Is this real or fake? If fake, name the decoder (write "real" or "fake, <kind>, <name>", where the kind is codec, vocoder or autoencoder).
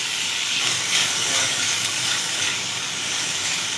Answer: fake, codec, DAC